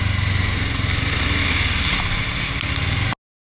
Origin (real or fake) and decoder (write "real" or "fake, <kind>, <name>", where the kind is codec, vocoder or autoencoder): real